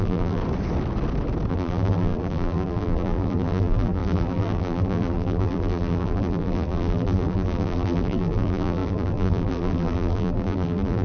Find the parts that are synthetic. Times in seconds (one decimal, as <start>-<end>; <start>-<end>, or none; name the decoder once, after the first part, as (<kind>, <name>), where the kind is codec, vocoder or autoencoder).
0.0-0.4 (vocoder, BigVGAN v2); 1.5-11.0